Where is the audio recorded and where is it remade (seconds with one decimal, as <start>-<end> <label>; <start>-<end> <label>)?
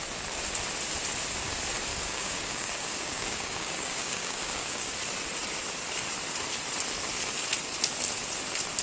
0.0-1.9 recorded; 1.9-4.9 remade; 4.9-8.8 recorded